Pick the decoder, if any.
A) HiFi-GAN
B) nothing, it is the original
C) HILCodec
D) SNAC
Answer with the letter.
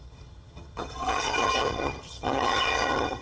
A